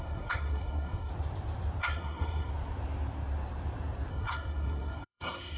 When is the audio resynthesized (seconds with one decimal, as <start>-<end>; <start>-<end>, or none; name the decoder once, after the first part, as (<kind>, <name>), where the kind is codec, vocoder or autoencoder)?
0.0-1.1 (codec, SNAC); 1.8-2.5; 4.1-5.6